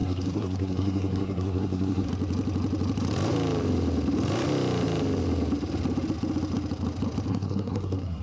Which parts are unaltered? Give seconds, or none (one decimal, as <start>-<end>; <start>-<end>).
2.1-7.3